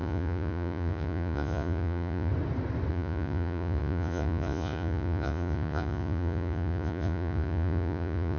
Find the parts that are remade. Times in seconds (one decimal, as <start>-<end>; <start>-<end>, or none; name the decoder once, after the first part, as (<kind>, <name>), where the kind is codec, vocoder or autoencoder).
0.0-2.3 (vocoder, Vocos); 2.9-8.4